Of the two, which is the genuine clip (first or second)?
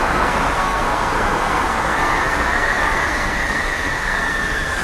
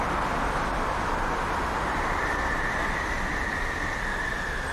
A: second